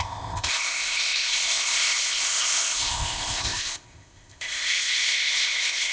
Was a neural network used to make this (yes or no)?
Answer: yes